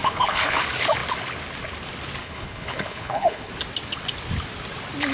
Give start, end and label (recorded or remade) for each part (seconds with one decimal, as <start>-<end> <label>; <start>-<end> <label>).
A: 0.0-0.6 remade; 0.6-2.2 recorded; 2.2-3.5 remade; 3.5-5.1 recorded